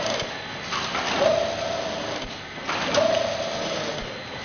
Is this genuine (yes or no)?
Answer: yes